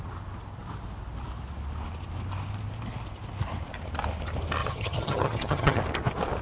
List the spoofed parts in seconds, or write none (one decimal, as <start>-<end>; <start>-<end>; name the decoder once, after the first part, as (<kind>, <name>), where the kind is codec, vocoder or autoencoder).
4.6-5.8 (vocoder, HiFi-GAN)

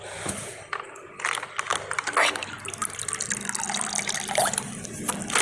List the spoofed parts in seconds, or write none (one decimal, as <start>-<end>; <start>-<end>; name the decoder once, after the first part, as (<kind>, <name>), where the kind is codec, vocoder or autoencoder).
none

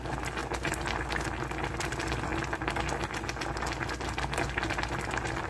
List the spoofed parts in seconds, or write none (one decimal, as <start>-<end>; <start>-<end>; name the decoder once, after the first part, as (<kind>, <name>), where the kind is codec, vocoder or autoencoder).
none

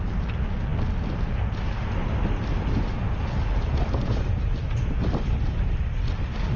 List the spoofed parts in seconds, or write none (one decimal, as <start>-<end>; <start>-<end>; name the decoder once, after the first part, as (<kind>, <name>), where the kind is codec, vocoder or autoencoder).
none

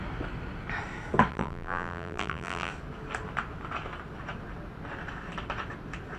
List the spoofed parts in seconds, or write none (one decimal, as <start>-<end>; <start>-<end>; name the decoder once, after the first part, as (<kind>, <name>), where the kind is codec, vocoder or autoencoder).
1.3-2.7 (vocoder, BigVGAN v2)